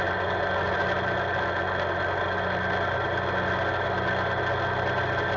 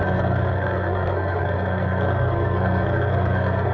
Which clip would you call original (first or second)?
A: first